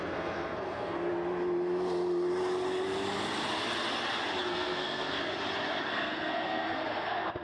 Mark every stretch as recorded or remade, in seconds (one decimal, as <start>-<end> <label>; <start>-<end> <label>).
0.0-1.1 remade; 1.1-4.5 recorded; 4.5-5.2 remade; 5.2-5.9 recorded; 5.9-7.4 remade